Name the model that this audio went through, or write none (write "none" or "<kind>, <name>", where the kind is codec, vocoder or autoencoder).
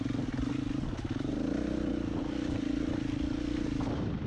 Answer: none